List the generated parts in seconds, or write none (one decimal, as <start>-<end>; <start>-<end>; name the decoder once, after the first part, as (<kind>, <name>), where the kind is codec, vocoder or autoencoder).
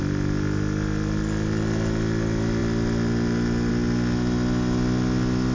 none